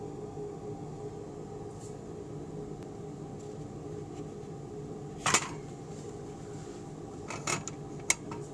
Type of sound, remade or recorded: recorded